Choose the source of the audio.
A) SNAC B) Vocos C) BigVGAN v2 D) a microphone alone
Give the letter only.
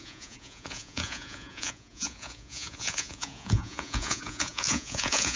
B